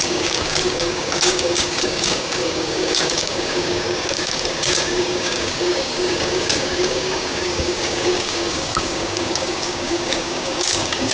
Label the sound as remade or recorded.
remade